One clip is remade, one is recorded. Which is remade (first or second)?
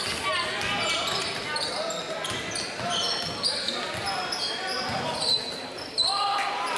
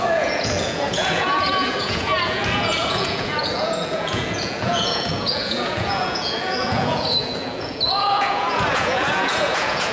second